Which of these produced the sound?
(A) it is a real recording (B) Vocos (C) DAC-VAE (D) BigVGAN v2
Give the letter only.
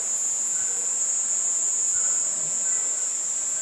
A